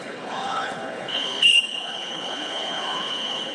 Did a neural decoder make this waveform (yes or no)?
yes